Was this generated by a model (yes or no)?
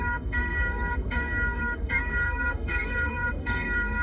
yes